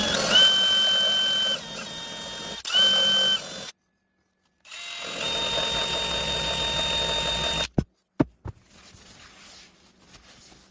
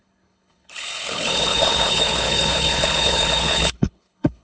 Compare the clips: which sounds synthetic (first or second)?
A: second